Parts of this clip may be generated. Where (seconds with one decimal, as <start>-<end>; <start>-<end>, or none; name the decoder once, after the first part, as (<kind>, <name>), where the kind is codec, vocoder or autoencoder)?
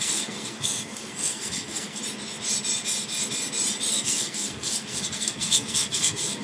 0.0-2.0 (codec, SNAC); 3.9-6.4